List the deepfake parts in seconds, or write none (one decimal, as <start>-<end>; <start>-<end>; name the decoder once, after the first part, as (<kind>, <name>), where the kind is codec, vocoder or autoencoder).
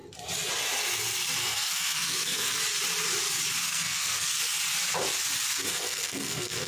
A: 1.4-2.6 (codec, SNAC); 3.6-4.4; 5.5-6.7